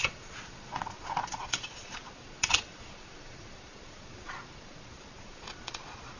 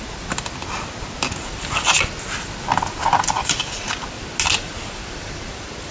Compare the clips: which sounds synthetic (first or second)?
first